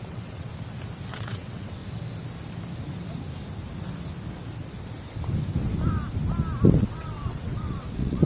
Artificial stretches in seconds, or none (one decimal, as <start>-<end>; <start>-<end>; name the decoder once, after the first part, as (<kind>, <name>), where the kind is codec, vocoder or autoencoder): 0.0-0.5 (vocoder, WaveNeXt); 1.1-1.8; 6.8-8.3